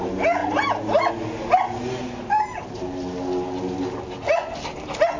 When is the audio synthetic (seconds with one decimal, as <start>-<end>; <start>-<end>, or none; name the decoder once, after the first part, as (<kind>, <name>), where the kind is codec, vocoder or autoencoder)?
none